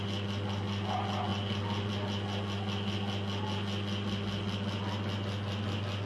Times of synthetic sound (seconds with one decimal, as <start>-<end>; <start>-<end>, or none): none